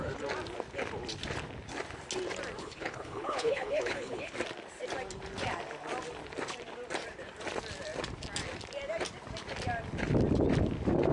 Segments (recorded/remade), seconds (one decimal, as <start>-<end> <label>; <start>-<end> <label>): 0.0-2.6 recorded; 2.6-4.3 remade; 4.3-11.1 recorded

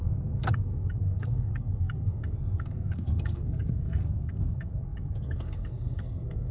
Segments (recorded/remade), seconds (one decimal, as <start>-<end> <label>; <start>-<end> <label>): 0.0-6.5 remade